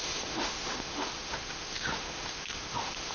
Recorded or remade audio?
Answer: remade